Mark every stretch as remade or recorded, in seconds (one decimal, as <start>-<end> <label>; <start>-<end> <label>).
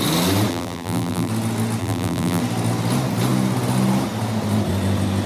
0.0-0.5 recorded; 0.5-1.3 remade; 1.3-1.8 recorded; 1.8-2.4 remade; 2.4-5.3 recorded